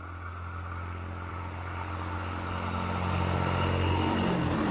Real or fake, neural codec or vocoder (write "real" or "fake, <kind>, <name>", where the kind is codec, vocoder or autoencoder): real